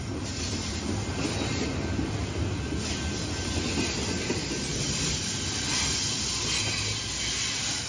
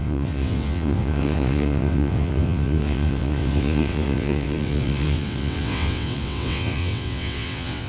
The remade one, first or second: second